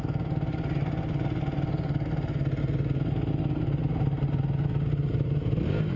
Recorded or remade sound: recorded